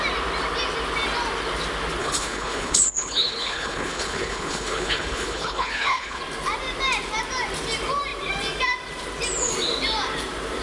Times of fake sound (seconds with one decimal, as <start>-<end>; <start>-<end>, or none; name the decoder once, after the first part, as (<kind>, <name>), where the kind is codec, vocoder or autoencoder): 2.0-6.2 (codec, HILCodec)